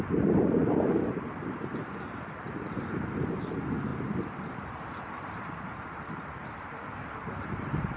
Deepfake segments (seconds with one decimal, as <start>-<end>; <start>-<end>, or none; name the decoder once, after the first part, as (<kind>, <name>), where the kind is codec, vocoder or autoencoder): 0.6-3.4 (vocoder, BigVGAN v2); 3.9-8.0

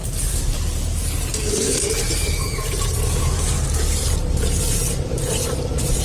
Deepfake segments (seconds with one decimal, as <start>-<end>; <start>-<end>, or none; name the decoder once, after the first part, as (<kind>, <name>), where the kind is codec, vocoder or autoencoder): 0.0-6.0 (vocoder, BigVGAN v2)

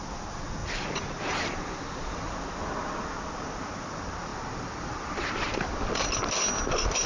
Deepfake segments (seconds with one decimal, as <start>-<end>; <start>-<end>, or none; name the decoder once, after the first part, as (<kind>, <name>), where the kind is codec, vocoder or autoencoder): 0.6-1.6 (vocoder, BigVGAN v2)

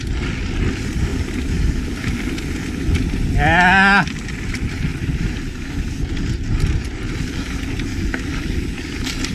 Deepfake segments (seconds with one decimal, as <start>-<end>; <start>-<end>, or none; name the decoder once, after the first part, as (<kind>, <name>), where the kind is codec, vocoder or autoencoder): 1.1-1.9 (vocoder, BigVGAN v2); 4.9-6.2

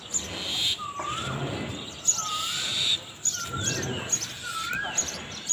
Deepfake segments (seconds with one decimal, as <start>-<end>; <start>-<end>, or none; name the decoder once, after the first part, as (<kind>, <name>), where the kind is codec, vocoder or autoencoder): 2.3-4.2 (vocoder, BigVGAN v2)

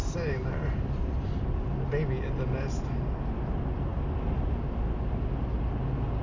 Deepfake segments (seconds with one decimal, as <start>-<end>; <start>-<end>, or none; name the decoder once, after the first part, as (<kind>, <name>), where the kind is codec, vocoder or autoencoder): 0.0-1.2 (vocoder, BigVGAN v2)

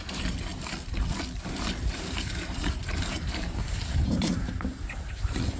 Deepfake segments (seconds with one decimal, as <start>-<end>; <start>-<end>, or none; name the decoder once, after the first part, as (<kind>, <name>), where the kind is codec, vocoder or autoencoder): 0.0-0.5 (vocoder, BigVGAN v2); 2.5-5.6

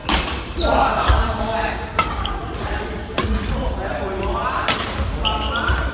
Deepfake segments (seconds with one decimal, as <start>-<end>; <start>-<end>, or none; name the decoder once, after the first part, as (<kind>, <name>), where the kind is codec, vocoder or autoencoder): 0.0-1.4 (vocoder, BigVGAN v2)